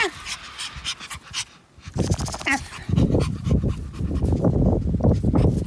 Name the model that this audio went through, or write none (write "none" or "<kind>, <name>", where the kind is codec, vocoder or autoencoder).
none